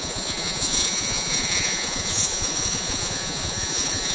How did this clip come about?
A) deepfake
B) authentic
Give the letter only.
A